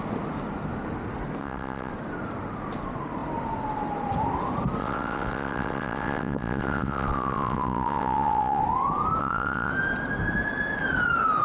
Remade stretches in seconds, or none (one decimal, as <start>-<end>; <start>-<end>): 1.4-1.9; 4.8-8.6; 9.2-9.7